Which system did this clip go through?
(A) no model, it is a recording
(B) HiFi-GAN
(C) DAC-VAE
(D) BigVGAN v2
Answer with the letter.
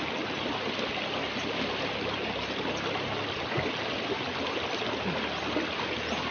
A